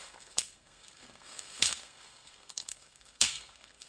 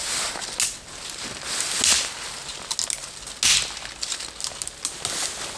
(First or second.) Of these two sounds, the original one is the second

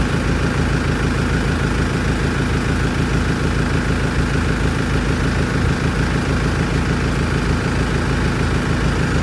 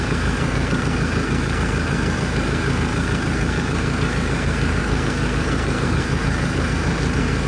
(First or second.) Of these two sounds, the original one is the first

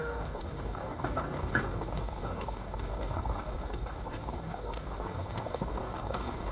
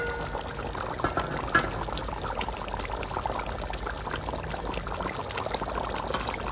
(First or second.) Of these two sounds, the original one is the second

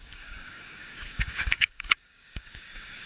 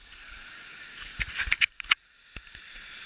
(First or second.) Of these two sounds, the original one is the second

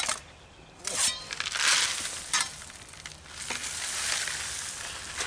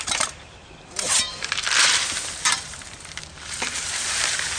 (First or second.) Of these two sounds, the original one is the first